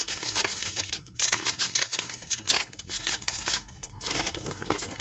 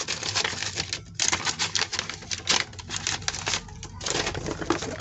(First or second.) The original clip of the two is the second